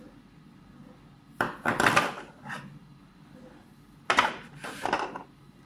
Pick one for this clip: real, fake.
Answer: real